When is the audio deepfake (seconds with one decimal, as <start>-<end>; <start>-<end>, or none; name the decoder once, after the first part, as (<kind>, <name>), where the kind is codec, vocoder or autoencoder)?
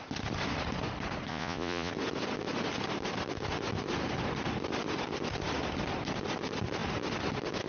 1.3-1.9 (vocoder, Vocos)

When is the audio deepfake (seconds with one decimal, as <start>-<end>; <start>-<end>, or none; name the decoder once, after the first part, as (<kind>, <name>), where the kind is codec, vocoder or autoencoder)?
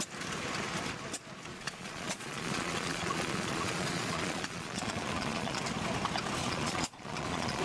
1.5-5.6 (vocoder, Vocos); 6.4-7.6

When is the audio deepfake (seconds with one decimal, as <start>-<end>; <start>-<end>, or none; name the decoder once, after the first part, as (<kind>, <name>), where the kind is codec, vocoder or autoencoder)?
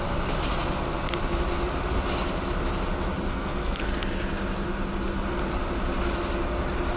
3.3-4.0 (codec, SNAC)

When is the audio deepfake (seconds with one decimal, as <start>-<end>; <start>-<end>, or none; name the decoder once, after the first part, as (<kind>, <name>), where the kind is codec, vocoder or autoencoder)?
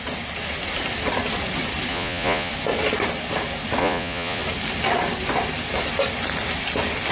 1.9-2.5 (vocoder, Vocos); 3.8-4.4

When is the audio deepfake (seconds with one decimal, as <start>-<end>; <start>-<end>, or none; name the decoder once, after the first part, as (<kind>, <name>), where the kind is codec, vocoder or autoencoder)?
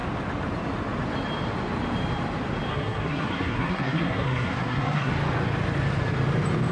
2.7-5.1 (codec, SNAC)